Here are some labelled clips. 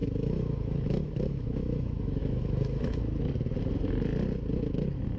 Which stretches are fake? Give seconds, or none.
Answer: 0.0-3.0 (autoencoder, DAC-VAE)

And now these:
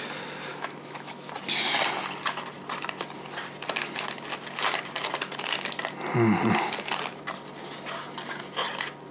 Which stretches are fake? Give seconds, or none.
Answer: 0.5-1.3 (autoencoder, DAC-VAE)